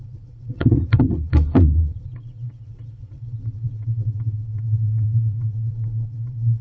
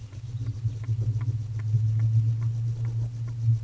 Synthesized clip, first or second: first